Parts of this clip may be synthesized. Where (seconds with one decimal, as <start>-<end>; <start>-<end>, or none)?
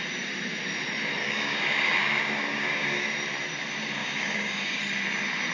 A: 1.2-3.1; 4.0-4.8